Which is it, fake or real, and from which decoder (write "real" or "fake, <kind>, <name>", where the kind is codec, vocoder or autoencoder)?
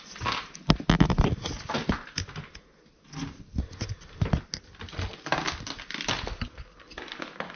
real